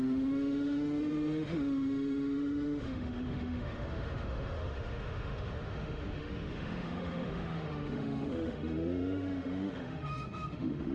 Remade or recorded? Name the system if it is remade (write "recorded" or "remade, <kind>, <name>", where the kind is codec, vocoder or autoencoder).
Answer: remade, autoencoder, DAC-VAE